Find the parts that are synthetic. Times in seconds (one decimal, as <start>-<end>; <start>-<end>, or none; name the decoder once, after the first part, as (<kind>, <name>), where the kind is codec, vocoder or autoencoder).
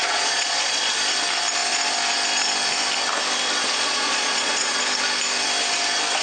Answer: 0.0-0.8 (vocoder, Vocos); 3.6-4.8